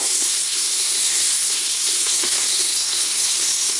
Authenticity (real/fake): fake